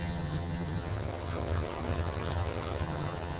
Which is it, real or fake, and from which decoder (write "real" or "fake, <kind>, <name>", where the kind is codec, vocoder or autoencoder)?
fake, vocoder, HiFi-GAN